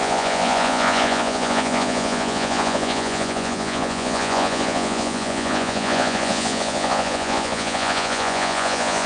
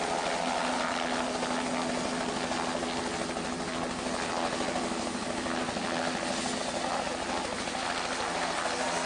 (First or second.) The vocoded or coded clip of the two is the first